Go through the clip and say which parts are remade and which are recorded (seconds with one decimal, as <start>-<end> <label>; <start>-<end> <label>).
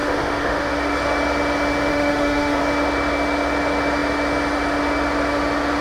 0.0-0.7 remade; 0.7-1.9 recorded; 1.9-2.6 remade; 2.6-5.8 recorded